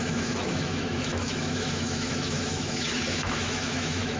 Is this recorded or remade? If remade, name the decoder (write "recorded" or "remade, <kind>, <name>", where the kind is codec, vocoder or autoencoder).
remade, autoencoder, DAC-VAE